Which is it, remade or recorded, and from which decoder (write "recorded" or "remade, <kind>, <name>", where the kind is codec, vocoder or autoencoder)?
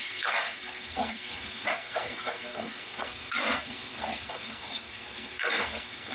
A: remade, codec, SNAC